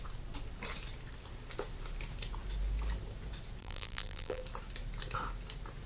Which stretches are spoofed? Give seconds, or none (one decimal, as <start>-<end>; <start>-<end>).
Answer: 3.6-4.4